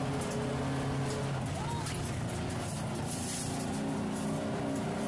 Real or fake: real